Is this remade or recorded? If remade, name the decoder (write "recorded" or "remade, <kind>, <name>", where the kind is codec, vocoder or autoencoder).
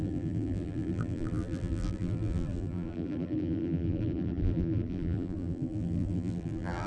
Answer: remade, vocoder, BigVGAN v2